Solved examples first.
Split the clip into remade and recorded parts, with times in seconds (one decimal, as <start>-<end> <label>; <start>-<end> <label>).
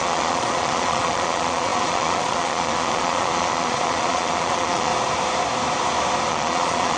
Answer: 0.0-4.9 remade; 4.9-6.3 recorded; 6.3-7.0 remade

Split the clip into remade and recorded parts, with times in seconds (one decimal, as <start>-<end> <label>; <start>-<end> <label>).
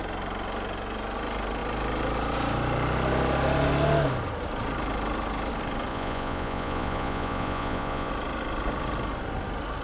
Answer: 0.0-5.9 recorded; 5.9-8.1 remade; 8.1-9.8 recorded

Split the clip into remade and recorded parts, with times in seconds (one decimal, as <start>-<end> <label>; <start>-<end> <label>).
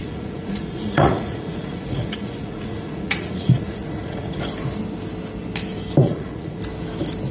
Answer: 0.0-4.4 remade; 4.4-6.0 recorded; 6.0-6.6 remade; 6.6-7.3 recorded